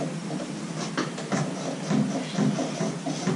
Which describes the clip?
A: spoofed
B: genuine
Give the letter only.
B